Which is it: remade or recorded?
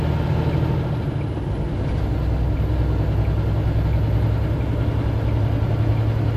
recorded